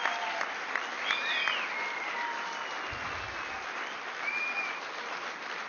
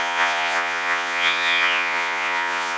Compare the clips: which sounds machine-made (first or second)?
second